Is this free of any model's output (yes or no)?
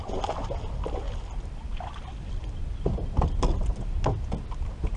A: yes